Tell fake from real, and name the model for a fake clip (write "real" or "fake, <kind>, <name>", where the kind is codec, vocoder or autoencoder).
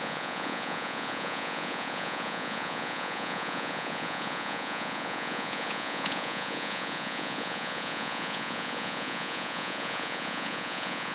fake, vocoder, Vocos